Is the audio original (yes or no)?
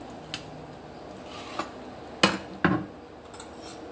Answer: yes